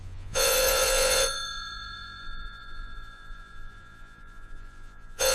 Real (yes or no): no